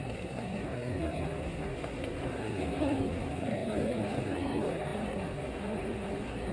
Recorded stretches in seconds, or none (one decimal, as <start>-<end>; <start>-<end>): none